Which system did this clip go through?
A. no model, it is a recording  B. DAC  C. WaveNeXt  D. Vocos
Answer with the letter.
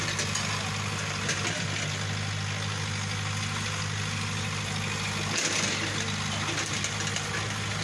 A